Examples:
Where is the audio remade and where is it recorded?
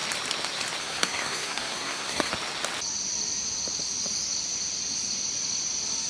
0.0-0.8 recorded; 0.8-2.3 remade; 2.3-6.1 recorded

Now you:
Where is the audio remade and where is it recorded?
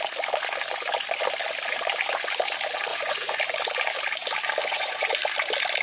0.0-2.9 recorded; 2.9-3.4 remade; 3.4-4.6 recorded; 4.6-5.1 remade; 5.1-5.8 recorded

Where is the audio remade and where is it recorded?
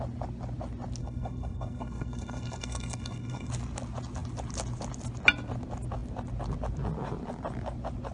0.0-1.0 recorded; 1.0-3.5 remade; 3.5-8.1 recorded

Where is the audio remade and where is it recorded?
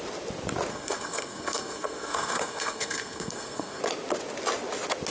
0.0-0.7 recorded; 0.7-3.8 remade; 3.8-5.1 recorded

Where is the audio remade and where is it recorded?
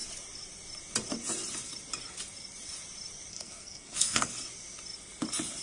0.0-3.3 recorded; 3.3-4.3 remade; 4.3-5.6 recorded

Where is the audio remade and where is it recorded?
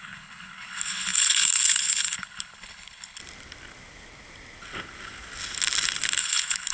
0.0-3.2 remade; 3.2-6.2 recorded; 6.2-6.7 remade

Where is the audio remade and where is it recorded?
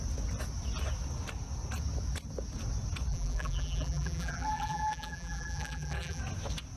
0.0-3.1 recorded; 3.1-6.2 remade; 6.2-6.8 recorded